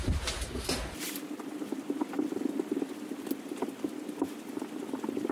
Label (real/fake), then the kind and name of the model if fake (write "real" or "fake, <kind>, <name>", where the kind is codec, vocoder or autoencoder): real